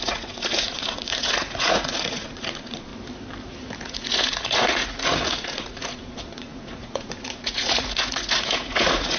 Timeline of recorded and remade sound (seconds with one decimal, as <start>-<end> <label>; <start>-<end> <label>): 0.0-2.9 remade; 2.9-3.8 recorded; 3.8-9.2 remade